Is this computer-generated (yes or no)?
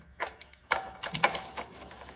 yes